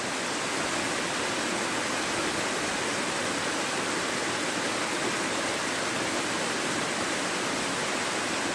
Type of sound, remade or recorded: recorded